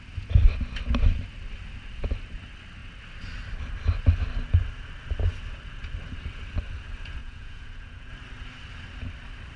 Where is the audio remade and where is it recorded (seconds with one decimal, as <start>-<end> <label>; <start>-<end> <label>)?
0.0-7.2 recorded; 7.2-8.1 remade; 8.1-9.6 recorded

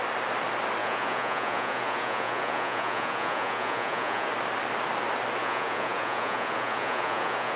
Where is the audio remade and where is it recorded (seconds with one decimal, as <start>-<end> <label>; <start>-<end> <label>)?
0.0-0.8 recorded; 0.8-4.3 remade; 4.3-5.4 recorded; 5.4-7.6 remade

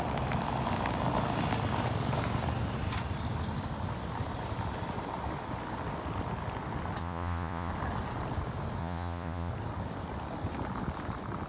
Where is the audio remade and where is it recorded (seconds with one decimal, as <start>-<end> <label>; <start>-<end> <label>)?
0.0-7.0 recorded; 7.0-7.7 remade; 7.7-8.8 recorded; 8.8-9.5 remade; 9.5-11.5 recorded